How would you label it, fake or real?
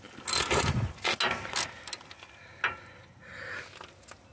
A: real